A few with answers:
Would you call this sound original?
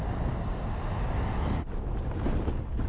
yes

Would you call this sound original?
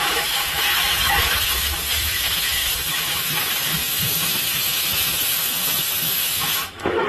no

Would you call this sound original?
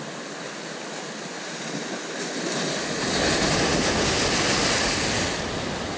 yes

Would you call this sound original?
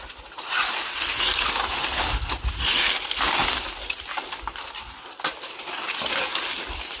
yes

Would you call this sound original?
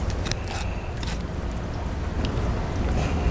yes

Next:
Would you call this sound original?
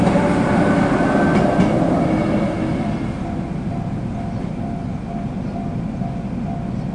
yes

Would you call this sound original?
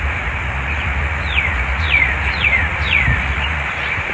no